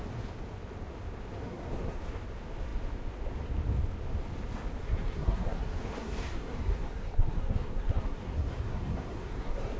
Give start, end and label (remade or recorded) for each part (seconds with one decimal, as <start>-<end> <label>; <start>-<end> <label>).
0.0-1.4 recorded; 1.4-2.0 remade; 2.0-4.8 recorded; 4.8-9.8 remade